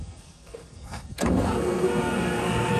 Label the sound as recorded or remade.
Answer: remade